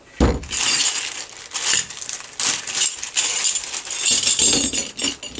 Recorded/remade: recorded